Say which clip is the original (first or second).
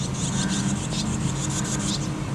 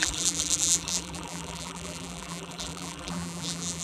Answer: first